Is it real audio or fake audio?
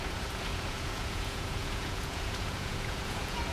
fake